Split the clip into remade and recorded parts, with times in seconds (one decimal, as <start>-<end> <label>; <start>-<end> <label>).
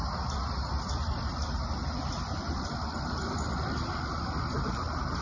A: 0.0-5.2 recorded